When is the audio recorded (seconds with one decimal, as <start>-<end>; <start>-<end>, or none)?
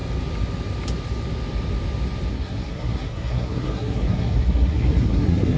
0.0-2.3